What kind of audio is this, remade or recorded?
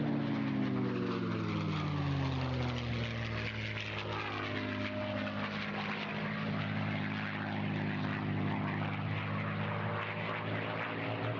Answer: recorded